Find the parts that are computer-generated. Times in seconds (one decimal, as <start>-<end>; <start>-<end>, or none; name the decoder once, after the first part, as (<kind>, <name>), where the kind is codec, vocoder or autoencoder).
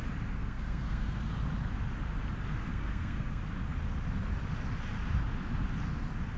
0.4-1.3 (codec, SNAC); 2.7-3.4